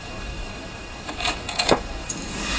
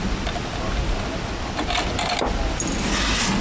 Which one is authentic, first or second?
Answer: second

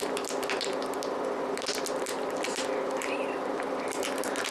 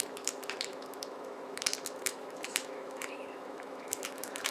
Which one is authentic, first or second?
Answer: first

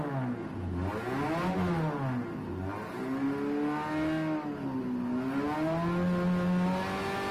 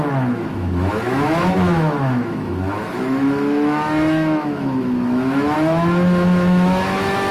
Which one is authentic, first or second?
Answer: first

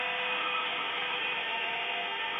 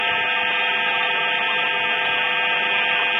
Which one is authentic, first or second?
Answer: second